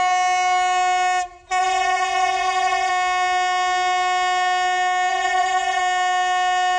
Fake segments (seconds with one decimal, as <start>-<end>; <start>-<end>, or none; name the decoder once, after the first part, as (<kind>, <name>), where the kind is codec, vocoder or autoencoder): 1.6-2.9 (vocoder, Vocos); 5.1-5.8